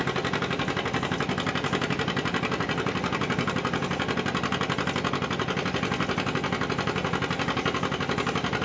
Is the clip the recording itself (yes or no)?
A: yes